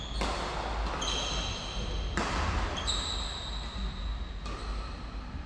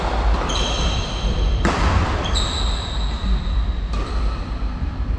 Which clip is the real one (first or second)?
first